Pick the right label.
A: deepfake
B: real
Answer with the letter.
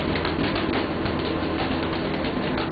B